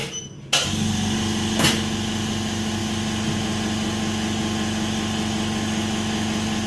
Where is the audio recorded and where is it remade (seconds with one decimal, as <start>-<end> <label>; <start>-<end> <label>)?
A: 0.0-6.7 recorded